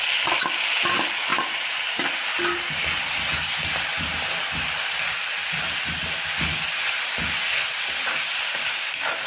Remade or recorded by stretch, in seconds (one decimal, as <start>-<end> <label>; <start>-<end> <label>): 0.0-1.3 recorded; 1.3-2.4 remade; 2.4-9.3 recorded